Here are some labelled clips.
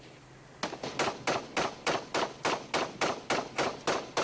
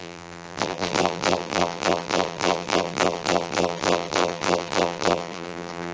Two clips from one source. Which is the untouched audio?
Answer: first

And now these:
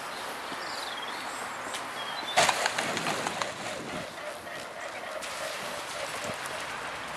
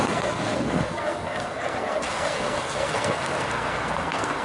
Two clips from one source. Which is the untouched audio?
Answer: first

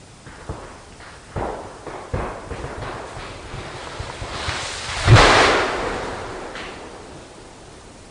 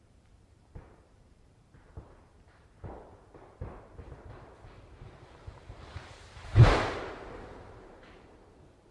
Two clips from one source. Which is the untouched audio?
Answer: first